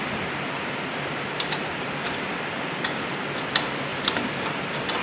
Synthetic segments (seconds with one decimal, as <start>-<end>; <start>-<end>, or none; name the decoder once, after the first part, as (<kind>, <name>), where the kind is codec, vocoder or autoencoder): 3.9-5.0 (vocoder, BigVGAN v2)